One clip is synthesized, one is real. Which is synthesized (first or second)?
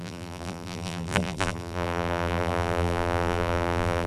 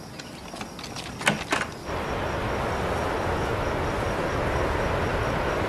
first